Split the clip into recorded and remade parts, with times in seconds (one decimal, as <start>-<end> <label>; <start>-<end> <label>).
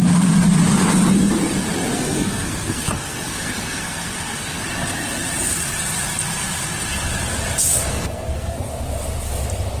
0.0-1.9 recorded; 1.9-4.6 remade; 4.6-7.9 recorded; 7.9-8.7 remade; 8.7-9.8 recorded